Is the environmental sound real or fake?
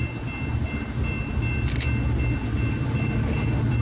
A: real